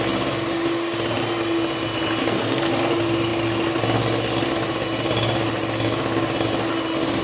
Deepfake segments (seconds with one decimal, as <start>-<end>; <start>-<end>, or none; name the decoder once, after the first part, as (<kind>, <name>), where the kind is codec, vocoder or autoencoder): 2.2-2.7 (codec, SNAC)